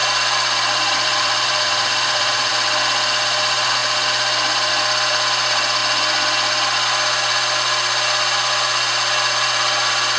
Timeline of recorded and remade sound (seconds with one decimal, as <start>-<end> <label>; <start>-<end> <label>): 0.0-2.5 remade; 2.5-10.2 recorded